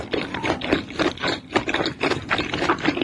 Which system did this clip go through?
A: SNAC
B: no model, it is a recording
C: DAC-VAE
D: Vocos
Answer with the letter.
B